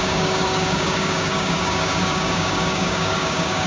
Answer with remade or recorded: remade